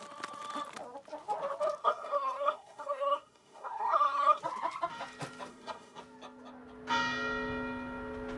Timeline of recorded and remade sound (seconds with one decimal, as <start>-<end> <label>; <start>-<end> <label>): 0.0-1.8 recorded; 1.8-4.4 remade; 4.4-5.5 recorded; 5.5-6.0 remade; 6.0-8.4 recorded